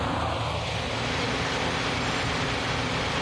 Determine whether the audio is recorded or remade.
recorded